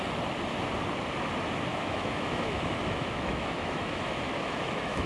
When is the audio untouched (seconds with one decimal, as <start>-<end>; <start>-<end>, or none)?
0.0-1.7